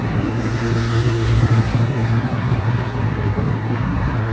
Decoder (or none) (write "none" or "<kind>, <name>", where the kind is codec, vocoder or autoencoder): codec, SNAC